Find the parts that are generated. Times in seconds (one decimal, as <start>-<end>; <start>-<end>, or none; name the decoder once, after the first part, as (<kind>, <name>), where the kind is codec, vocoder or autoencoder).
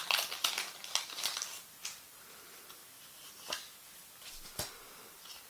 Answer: none